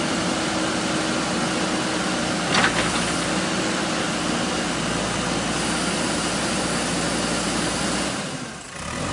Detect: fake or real real